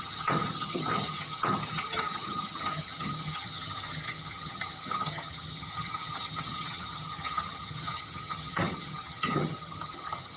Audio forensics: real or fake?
fake